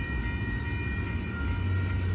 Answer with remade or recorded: recorded